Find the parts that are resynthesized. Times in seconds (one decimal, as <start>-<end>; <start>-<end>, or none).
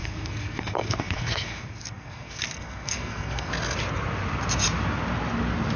0.0-3.5